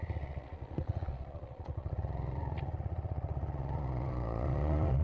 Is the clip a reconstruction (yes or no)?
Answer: yes